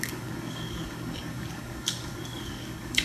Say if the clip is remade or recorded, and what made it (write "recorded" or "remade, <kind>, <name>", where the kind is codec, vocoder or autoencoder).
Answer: remade, codec, DAC